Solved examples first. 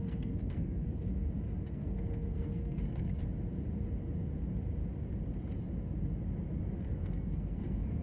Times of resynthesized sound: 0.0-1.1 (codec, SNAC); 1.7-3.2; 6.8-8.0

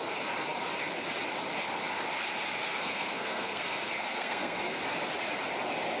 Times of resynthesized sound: 2.6-4.8 (codec, SNAC)

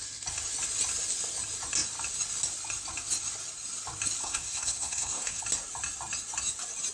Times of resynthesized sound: 4.2-5.4 (codec, SNAC)

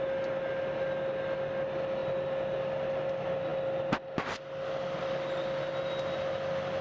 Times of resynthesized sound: none

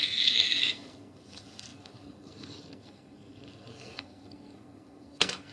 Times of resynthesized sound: 0.0-5.5 (codec, SNAC)

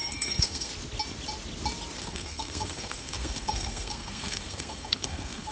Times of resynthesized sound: 0.0-0.7 (codec, SNAC); 2.0-5.5

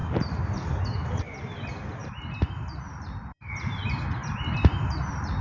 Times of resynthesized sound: none